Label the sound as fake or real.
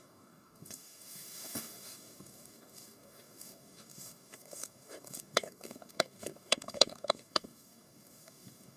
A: fake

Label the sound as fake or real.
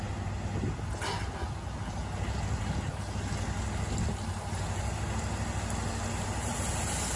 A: real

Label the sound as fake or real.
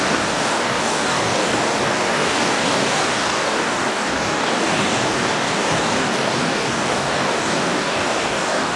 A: fake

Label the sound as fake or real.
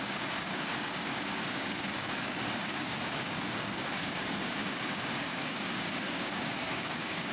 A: fake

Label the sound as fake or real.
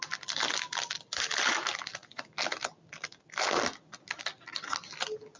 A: real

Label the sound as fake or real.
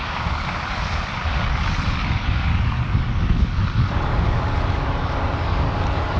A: fake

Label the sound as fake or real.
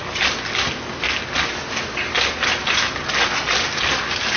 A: real